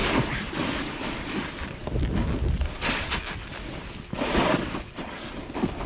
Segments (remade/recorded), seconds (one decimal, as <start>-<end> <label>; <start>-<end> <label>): 0.0-5.9 recorded